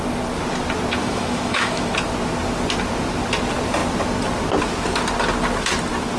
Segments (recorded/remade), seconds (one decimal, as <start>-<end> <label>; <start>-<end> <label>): 0.0-1.0 recorded; 1.0-1.9 remade; 1.9-6.2 recorded